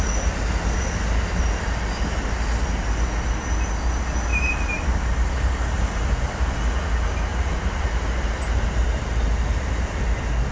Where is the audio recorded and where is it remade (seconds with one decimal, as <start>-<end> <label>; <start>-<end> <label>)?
0.0-4.3 recorded; 4.3-6.4 remade; 6.4-7.3 recorded; 7.3-9.2 remade; 9.2-10.5 recorded